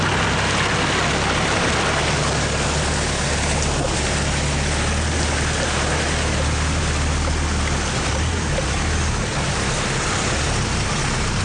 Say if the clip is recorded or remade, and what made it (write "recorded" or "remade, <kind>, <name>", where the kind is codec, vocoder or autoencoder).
recorded